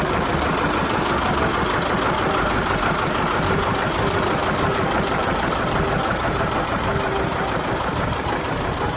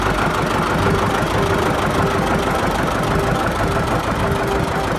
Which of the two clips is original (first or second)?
second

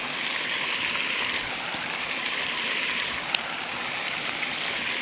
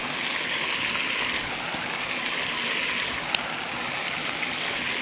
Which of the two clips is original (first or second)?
second